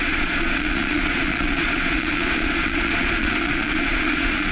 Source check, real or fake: fake